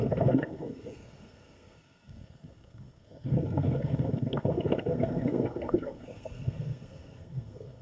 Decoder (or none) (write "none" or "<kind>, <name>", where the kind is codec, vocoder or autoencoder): codec, SNAC